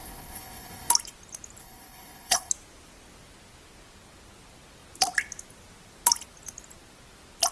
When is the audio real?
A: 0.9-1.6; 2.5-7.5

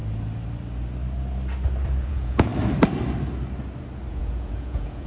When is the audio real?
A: 0.0-2.0; 2.5-4.1

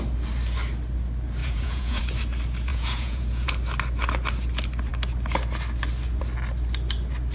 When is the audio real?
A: 0.0-1.4; 2.0-2.7; 3.5-7.3

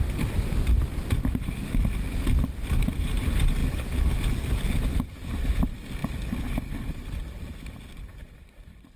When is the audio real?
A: 0.0-6.0; 6.6-9.0

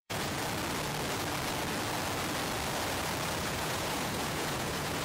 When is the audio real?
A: 0.4-3.4